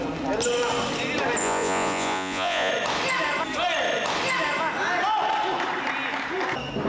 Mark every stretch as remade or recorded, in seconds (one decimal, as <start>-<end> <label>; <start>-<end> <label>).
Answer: 0.0-1.4 recorded; 1.4-2.7 remade; 2.7-6.9 recorded